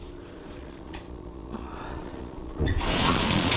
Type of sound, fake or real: fake